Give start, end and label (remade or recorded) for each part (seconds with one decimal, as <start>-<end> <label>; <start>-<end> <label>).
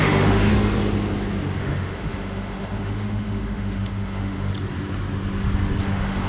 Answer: 0.0-0.5 remade; 0.5-1.6 recorded; 1.6-4.5 remade; 4.5-5.8 recorded; 5.8-6.3 remade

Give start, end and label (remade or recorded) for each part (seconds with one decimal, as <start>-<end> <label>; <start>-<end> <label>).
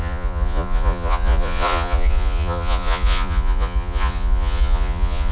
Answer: 0.0-5.3 remade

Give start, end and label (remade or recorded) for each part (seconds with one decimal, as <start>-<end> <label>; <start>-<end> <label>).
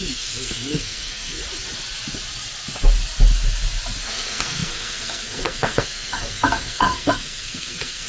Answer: 0.0-1.4 remade; 1.4-4.1 recorded; 4.1-8.1 remade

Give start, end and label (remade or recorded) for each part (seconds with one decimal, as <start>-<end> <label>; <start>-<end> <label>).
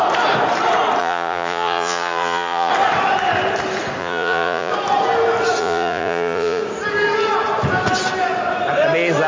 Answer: 0.0-1.0 recorded; 1.0-2.7 remade; 2.7-4.0 recorded; 4.0-4.7 remade; 4.7-5.6 recorded; 5.6-6.6 remade; 6.6-9.3 recorded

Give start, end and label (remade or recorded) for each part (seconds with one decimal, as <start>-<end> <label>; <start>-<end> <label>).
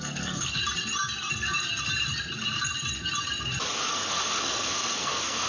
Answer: 0.0-0.6 remade; 0.6-3.9 recorded; 3.9-5.5 remade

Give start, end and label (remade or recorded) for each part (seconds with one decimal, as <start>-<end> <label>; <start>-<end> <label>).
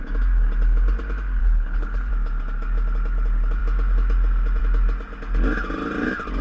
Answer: 0.0-1.4 recorded; 1.4-2.1 remade; 2.1-6.4 recorded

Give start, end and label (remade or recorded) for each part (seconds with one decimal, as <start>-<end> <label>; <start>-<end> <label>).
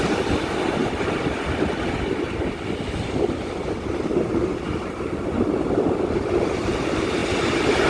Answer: 0.0-0.8 recorded; 0.8-1.9 remade; 1.9-4.5 recorded; 4.5-6.8 remade; 6.8-7.2 recorded; 7.2-7.9 remade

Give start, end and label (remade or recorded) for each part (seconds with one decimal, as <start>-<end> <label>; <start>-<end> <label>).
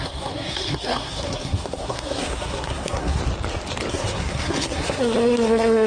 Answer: 0.0-3.2 remade; 3.2-3.9 recorded; 3.9-5.9 remade